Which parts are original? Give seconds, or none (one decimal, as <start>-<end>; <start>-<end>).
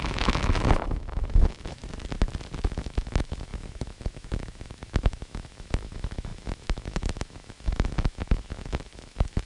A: 1.8-2.6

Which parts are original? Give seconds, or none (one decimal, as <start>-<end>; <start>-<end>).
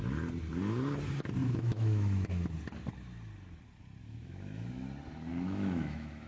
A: 0.0-1.4; 2.3-4.0; 4.7-5.3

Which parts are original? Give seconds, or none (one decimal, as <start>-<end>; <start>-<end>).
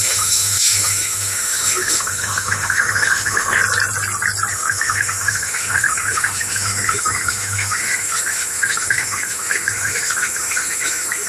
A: 3.6-4.5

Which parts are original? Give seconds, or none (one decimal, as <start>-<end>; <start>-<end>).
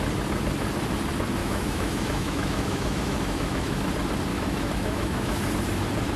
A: 0.0-1.4; 3.9-4.3; 5.4-6.2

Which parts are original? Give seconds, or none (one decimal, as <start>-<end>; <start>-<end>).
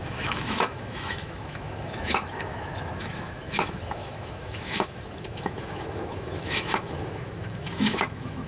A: none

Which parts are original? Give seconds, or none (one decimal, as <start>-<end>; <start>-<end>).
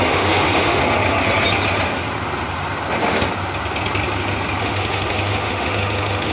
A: 0.8-4.6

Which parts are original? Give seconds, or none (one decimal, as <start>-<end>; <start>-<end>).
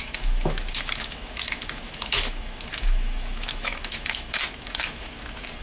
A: none